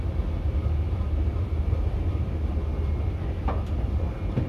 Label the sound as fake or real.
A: real